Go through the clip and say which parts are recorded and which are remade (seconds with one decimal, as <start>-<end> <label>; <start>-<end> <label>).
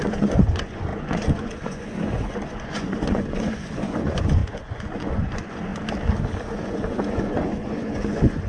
0.0-5.7 remade; 5.7-6.5 recorded; 6.5-8.5 remade